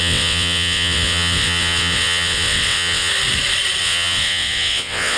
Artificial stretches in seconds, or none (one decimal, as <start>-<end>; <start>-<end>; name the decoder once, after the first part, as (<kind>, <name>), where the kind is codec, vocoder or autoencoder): 0.0-3.1 (vocoder, WaveNeXt); 3.8-5.2